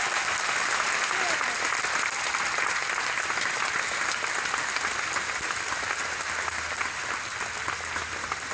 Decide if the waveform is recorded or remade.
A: recorded